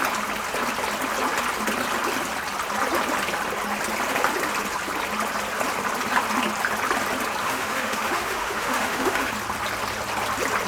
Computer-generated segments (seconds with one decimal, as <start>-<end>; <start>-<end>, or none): 7.4-9.3